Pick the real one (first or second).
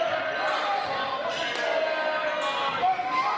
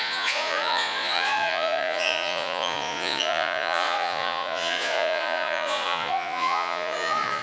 first